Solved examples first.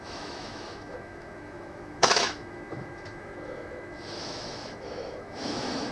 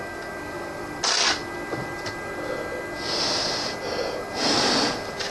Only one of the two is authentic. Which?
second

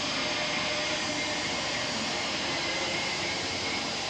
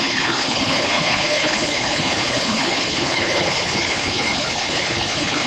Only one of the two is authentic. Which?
first